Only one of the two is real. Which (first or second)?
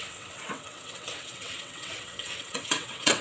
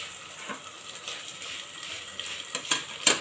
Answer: second